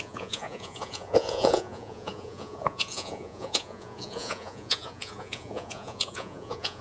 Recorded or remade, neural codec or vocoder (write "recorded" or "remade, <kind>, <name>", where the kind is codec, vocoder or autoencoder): remade, vocoder, Vocos